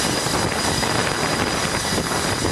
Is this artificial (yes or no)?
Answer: no